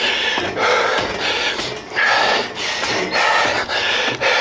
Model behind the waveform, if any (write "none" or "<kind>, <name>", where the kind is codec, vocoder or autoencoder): none